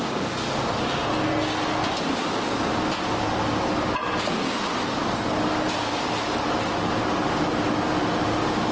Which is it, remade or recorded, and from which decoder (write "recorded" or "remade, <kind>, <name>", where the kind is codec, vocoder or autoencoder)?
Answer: recorded